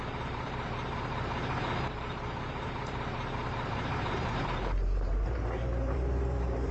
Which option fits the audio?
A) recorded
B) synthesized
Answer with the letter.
B